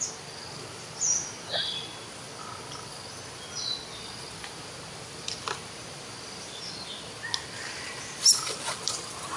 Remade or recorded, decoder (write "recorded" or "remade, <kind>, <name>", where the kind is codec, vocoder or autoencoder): recorded